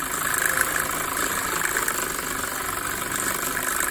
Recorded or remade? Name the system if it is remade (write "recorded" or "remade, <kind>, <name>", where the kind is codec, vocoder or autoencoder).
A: recorded